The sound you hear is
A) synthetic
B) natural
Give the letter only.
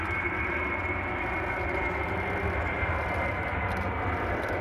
B